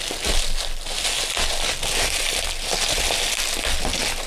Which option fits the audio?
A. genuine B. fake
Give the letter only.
A